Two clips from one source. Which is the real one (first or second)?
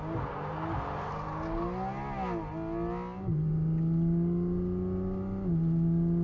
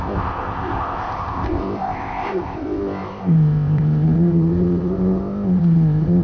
first